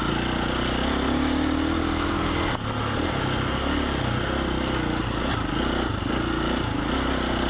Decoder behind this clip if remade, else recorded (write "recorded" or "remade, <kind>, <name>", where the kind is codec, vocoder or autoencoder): recorded